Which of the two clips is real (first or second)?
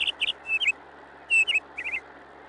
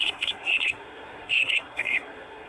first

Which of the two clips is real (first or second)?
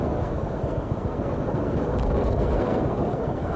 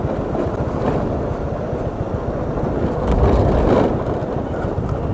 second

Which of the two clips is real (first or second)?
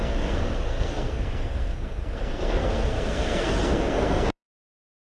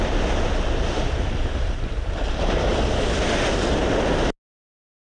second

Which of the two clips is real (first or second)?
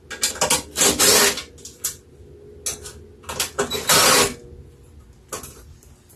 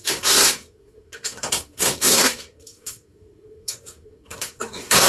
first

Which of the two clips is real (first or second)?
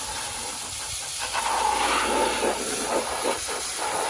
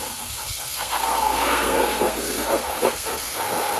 first